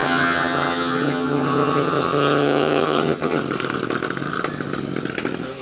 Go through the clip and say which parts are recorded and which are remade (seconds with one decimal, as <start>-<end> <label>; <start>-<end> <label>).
0.0-3.4 remade; 3.4-5.6 recorded